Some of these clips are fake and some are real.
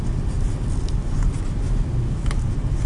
real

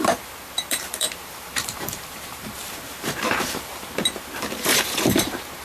fake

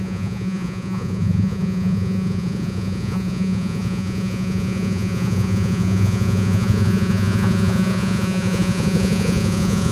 fake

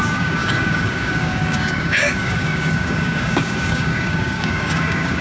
fake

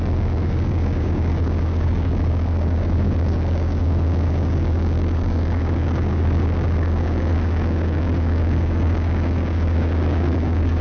fake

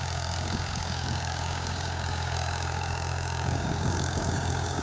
fake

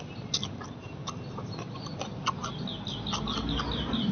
real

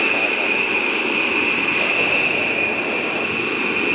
real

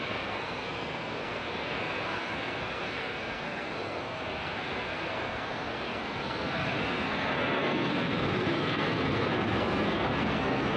fake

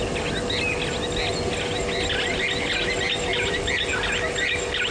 real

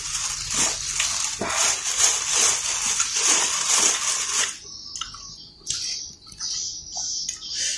real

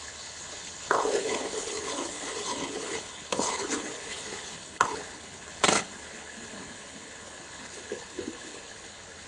fake